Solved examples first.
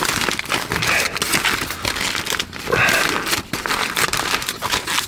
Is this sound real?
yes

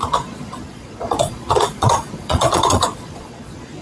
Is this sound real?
no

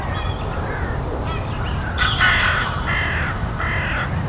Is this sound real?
yes